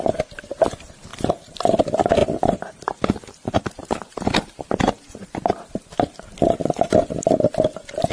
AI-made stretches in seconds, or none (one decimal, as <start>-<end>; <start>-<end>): 1.1-1.8; 2.2-4.1